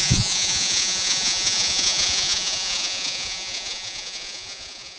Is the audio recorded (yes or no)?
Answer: no